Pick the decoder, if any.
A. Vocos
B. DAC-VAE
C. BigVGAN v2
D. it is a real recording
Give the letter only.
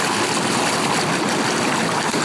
D